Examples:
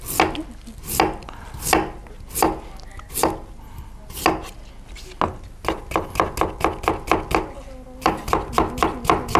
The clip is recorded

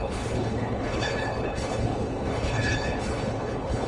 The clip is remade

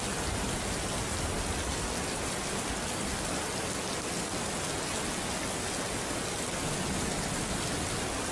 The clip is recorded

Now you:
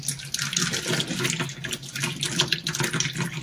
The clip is recorded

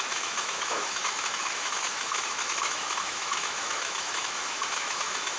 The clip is remade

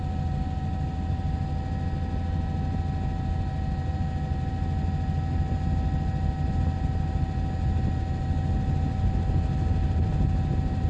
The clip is recorded